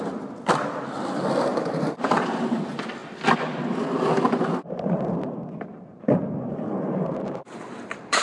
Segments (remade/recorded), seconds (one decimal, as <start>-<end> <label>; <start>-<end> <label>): 0.0-1.5 recorded; 1.5-2.5 remade; 2.5-5.7 recorded; 5.7-8.2 remade